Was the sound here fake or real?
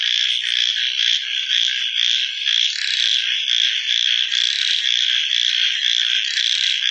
real